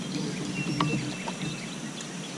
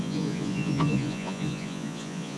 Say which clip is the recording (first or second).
first